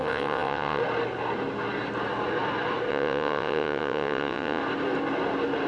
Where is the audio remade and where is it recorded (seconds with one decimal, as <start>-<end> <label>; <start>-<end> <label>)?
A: 0.0-0.8 remade; 0.8-2.9 recorded; 2.9-4.6 remade; 4.6-5.7 recorded